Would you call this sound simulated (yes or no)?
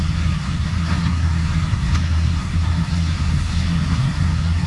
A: yes